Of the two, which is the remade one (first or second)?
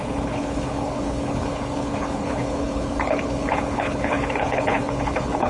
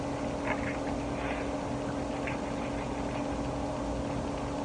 first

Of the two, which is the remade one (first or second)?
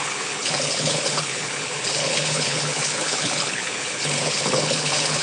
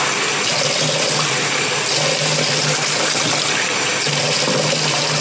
first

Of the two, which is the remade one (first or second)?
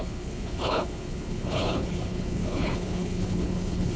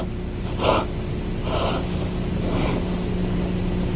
first